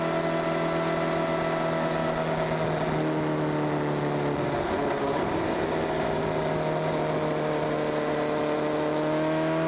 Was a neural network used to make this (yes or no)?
no